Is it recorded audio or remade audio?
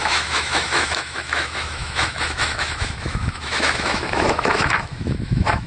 remade